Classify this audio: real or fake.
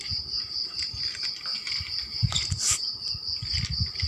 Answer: real